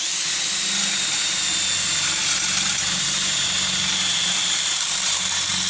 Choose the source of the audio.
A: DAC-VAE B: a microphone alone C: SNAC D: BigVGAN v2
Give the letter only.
D